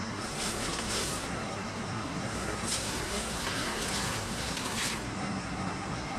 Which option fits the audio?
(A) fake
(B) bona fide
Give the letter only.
A